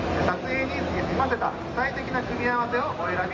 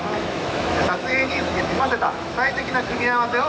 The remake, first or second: second